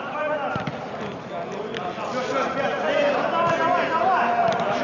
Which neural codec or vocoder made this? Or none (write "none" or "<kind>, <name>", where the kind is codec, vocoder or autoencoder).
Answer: none